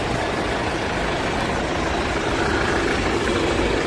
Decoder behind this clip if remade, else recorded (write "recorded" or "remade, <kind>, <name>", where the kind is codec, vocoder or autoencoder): recorded